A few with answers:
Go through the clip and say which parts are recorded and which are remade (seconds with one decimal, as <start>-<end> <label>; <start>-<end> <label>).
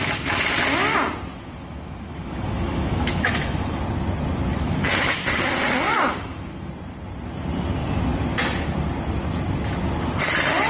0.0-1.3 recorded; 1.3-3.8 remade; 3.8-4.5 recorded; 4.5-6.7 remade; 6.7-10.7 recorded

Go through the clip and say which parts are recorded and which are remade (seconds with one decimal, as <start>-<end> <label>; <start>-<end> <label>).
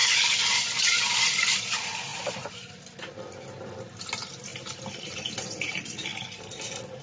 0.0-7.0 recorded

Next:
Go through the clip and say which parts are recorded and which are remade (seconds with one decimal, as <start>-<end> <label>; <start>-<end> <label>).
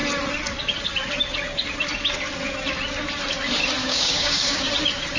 0.0-3.8 recorded; 3.8-4.7 remade; 4.7-5.2 recorded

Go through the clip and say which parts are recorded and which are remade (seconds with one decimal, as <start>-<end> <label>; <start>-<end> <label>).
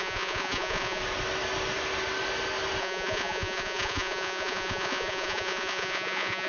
0.0-1.0 remade; 1.0-2.8 recorded; 2.8-6.5 remade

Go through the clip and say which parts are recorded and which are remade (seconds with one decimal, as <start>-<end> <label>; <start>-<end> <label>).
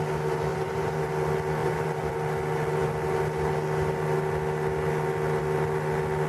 0.0-0.5 recorded; 0.5-1.1 remade; 1.1-1.6 recorded; 1.6-2.1 remade; 2.1-6.3 recorded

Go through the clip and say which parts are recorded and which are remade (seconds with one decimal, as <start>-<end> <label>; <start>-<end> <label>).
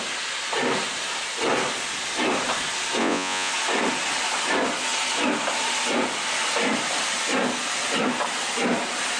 0.0-3.0 recorded; 3.0-3.5 remade; 3.5-9.2 recorded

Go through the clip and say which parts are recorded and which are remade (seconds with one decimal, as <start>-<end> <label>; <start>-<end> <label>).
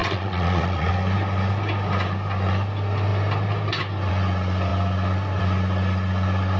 0.0-0.9 remade; 0.9-6.6 recorded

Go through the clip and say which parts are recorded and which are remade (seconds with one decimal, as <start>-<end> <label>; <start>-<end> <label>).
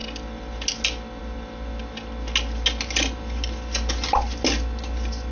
0.0-5.3 recorded